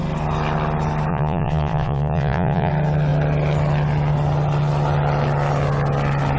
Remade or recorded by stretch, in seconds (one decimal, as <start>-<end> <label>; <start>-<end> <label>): 0.0-1.1 recorded; 1.1-2.7 remade; 2.7-6.4 recorded